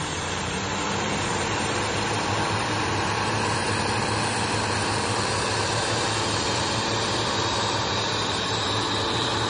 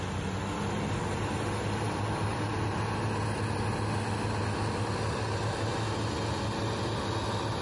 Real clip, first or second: second